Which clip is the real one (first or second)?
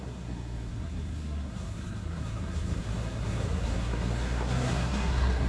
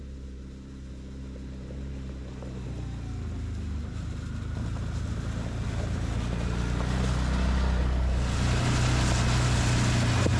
second